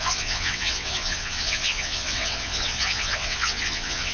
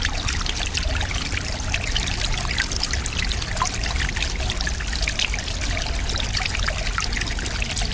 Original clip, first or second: second